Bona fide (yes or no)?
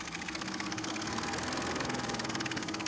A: no